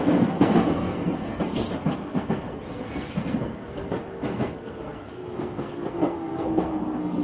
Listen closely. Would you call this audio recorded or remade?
remade